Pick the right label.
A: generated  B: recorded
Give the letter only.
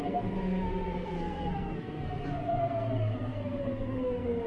A